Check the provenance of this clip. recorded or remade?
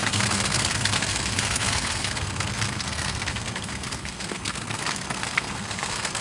remade